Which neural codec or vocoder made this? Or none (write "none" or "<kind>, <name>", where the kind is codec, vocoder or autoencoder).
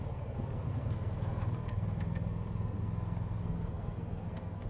codec, SNAC